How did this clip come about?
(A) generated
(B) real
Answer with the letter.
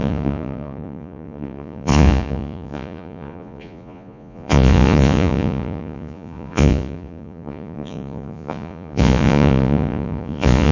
A